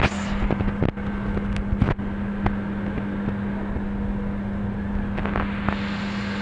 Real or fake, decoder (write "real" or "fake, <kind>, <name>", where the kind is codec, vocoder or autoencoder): real